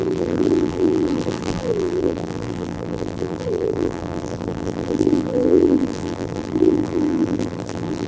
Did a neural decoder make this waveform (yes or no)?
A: yes